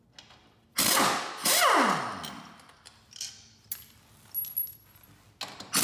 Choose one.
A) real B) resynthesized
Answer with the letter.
A